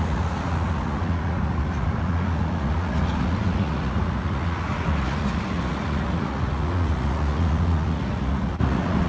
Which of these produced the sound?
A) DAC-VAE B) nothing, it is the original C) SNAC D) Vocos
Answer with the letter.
D